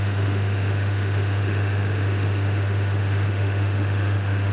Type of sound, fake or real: fake